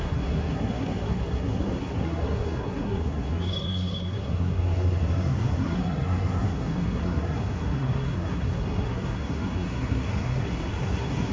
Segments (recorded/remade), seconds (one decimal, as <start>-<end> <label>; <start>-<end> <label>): 0.0-11.3 remade